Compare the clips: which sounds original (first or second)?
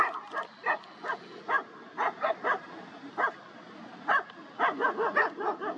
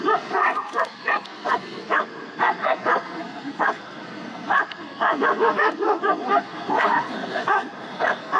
first